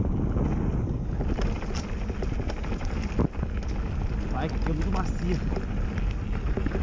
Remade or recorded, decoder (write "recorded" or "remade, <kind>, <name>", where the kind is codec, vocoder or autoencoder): recorded